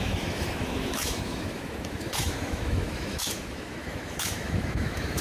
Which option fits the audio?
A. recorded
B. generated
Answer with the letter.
B